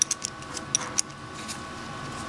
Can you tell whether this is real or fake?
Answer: real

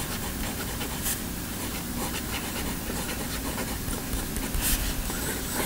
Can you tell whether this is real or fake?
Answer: real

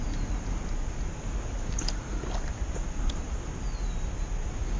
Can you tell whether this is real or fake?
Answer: real